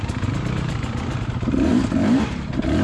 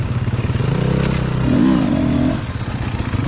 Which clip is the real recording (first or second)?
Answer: second